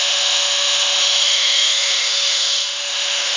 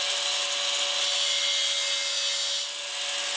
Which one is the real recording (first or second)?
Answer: second